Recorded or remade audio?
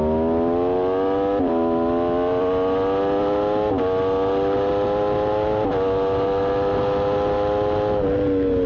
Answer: recorded